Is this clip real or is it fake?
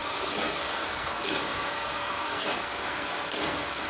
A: fake